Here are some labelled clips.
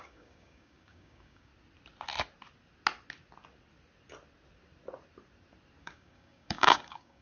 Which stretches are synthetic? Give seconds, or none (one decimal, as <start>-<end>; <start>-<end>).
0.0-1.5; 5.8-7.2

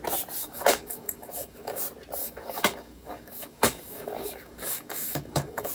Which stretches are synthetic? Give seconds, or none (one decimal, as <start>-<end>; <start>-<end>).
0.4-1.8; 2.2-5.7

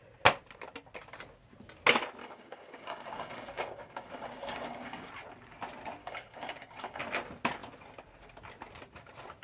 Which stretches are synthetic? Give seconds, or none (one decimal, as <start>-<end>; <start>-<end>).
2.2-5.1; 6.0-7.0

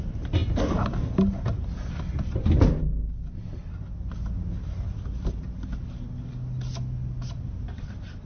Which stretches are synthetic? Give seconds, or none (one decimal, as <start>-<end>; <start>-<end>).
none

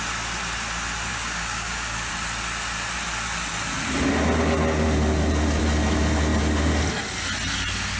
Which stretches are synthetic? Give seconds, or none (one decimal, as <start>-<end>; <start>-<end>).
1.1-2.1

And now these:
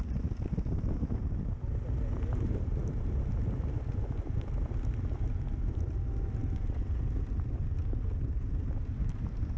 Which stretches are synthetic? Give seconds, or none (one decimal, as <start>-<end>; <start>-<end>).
none

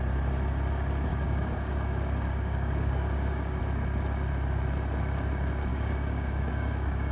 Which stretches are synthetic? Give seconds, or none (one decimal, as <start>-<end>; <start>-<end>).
1.1-3.6; 5.7-7.1